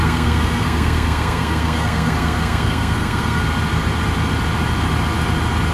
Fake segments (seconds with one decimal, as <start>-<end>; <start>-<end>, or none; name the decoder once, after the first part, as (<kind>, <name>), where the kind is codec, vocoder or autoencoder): 0.0-3.4 (codec, SNAC)